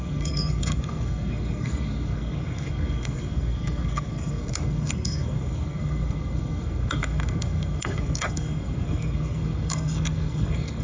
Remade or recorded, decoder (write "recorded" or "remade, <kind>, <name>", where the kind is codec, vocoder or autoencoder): remade, codec, SNAC